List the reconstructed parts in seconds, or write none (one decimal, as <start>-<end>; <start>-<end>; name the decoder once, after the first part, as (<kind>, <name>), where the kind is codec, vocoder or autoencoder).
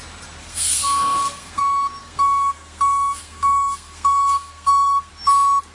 0.4-1.6 (codec, SNAC); 2.0-5.1